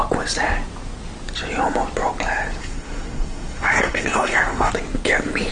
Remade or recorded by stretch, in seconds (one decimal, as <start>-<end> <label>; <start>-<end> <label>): 0.0-2.6 recorded; 2.6-4.7 remade; 4.7-5.5 recorded